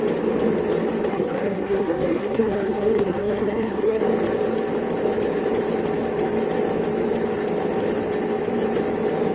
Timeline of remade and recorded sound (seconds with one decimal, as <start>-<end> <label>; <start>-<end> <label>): 0.0-1.1 recorded; 1.1-4.0 remade; 4.0-9.3 recorded